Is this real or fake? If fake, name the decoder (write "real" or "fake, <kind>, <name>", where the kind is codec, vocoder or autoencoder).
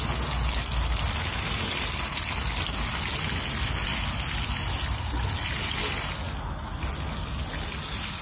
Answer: real